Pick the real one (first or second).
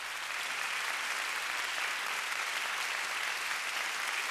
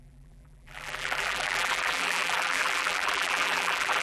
first